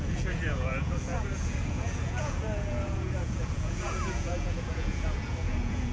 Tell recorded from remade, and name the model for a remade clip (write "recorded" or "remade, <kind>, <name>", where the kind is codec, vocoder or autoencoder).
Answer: remade, vocoder, Vocos